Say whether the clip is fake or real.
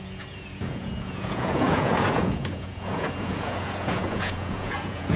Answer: fake